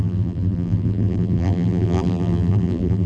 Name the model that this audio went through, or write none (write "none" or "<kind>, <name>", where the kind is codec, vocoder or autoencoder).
vocoder, BigVGAN v2